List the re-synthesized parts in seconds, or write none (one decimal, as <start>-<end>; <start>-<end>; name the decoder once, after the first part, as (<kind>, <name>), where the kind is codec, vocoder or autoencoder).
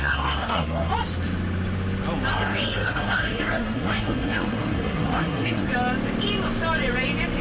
0.0-0.9 (codec, SNAC); 2.3-5.7